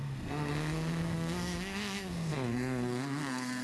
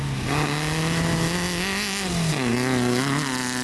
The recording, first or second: second